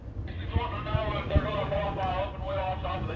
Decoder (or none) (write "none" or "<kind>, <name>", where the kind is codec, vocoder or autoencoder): vocoder, Vocos